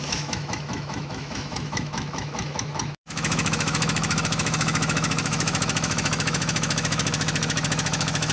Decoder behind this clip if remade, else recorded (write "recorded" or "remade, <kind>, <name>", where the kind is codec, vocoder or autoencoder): remade, autoencoder, DAC-VAE